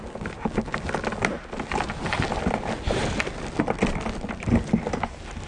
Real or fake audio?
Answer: real